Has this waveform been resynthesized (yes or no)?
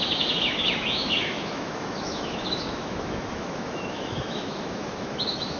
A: yes